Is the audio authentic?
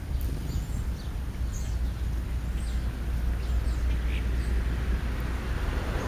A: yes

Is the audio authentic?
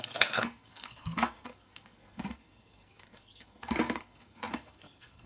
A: no